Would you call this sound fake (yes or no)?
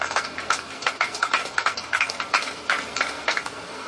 yes